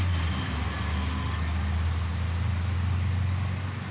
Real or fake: real